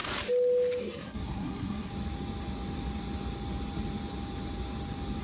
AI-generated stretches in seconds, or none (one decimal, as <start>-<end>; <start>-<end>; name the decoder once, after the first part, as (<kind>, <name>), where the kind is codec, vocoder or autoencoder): 0.8-1.9 (codec, SNAC)